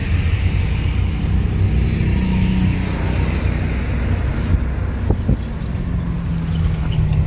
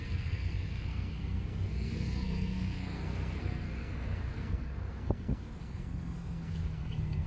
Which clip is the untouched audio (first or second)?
first